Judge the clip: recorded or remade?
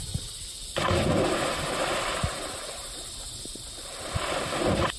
recorded